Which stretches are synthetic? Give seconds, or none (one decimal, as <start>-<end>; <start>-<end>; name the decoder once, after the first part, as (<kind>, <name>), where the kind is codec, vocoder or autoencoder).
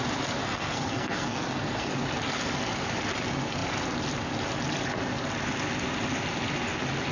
0.4-1.9 (codec, SNAC)